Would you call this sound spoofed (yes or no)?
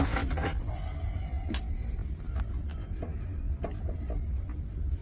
no